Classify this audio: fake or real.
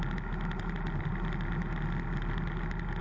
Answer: real